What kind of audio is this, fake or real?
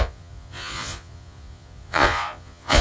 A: fake